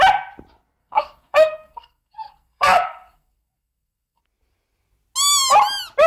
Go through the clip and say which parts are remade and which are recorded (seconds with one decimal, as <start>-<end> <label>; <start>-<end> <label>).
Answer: 0.0-0.8 recorded; 0.8-4.2 remade; 4.2-6.1 recorded